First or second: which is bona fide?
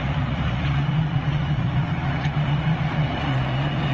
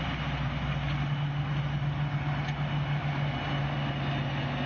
second